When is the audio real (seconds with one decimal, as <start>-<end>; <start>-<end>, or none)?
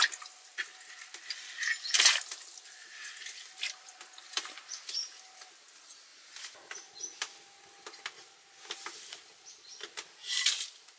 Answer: 0.0-11.0